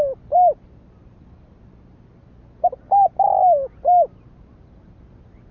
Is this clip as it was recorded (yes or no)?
yes